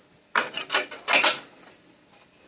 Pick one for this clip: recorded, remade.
recorded